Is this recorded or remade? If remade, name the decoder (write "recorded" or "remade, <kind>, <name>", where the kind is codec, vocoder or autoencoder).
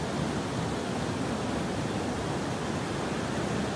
recorded